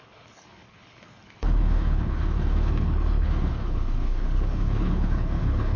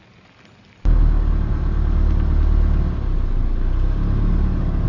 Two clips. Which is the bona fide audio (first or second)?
second